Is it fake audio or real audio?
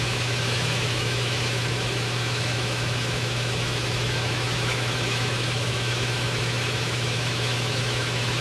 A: fake